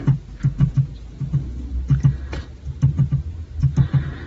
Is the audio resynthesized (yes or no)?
no